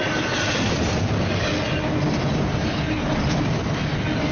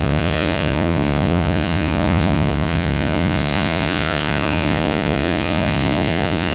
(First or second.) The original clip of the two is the first